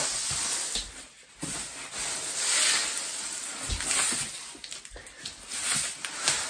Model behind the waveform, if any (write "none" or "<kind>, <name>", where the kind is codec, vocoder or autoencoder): none